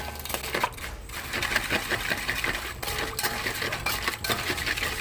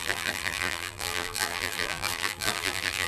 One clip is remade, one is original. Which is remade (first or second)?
second